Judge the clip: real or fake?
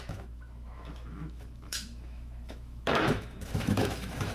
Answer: fake